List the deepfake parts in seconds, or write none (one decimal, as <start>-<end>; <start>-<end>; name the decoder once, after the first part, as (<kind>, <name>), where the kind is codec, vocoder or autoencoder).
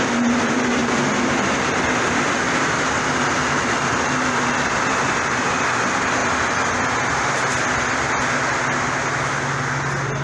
none